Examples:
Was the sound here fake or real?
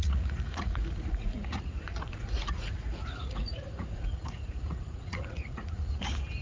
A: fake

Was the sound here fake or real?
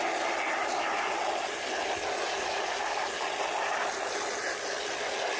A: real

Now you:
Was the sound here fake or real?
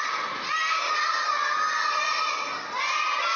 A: real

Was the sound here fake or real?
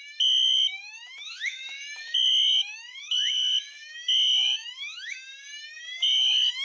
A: fake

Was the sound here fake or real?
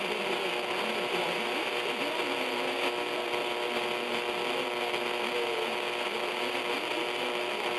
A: real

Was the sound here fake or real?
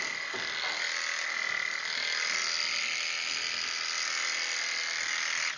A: real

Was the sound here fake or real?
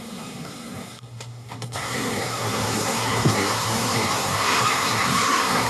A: fake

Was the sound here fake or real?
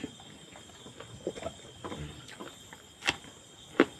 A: real